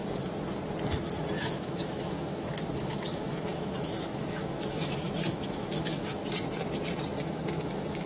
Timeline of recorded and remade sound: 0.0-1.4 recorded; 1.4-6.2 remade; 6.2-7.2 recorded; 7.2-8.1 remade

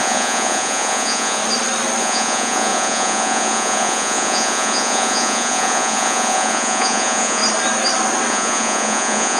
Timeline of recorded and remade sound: 0.0-1.4 remade; 1.4-2.0 recorded; 2.0-7.4 remade; 7.4-8.3 recorded; 8.3-9.4 remade

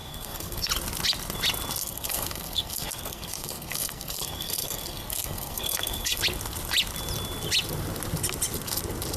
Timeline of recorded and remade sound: 0.0-0.7 remade; 0.7-1.8 recorded; 1.8-6.2 remade; 6.2-9.2 recorded

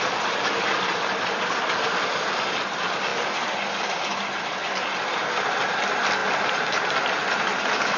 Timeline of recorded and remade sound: 0.0-8.0 recorded

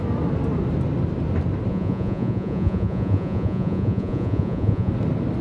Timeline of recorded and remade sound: 0.0-1.7 recorded; 1.7-4.9 remade; 4.9-5.4 recorded